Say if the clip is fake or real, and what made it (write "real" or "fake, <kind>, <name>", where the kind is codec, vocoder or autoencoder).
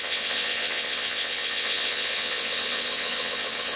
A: fake, vocoder, WaveNeXt